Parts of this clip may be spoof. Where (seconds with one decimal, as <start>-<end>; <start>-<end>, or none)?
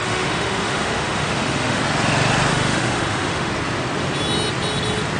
0.0-1.8; 2.5-3.5